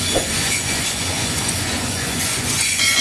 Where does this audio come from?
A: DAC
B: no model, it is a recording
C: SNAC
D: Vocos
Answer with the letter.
D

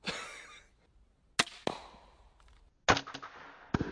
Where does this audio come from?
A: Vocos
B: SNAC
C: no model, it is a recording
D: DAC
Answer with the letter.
C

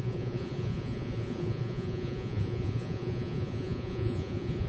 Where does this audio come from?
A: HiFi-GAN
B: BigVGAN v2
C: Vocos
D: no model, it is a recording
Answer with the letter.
C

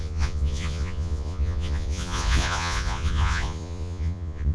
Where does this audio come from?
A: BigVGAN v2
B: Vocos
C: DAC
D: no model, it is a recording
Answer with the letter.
B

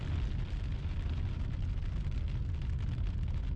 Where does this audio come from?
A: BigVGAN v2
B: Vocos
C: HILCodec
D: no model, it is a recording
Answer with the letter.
D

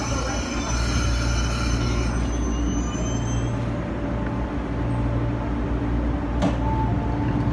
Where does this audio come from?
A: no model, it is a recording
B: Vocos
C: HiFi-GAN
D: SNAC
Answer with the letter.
A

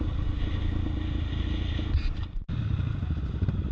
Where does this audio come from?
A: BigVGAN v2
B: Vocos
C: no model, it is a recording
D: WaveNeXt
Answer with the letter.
C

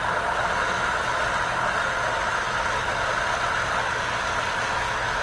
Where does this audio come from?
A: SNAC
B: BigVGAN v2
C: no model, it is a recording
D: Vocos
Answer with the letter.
C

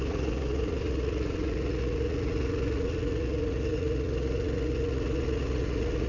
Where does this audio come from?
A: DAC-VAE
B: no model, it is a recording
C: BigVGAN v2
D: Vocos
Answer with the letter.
D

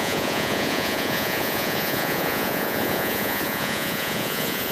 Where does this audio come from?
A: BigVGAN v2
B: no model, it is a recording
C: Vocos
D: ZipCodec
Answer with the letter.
C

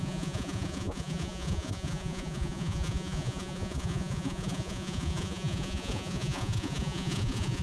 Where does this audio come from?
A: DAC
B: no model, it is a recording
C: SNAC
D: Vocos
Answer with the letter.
D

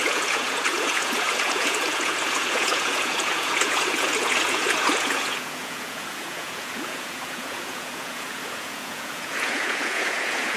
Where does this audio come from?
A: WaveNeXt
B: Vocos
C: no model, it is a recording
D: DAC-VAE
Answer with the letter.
B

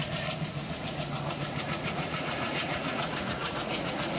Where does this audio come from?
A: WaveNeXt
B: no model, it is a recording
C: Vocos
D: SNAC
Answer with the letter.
C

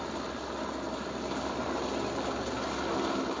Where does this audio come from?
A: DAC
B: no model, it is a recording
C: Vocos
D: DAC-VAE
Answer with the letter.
B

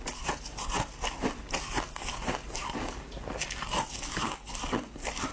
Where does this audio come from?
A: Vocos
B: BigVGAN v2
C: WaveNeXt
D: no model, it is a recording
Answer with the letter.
D